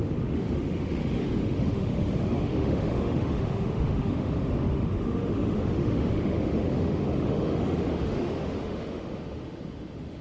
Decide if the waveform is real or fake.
fake